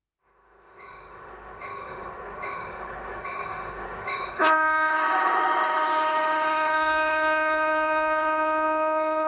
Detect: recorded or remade remade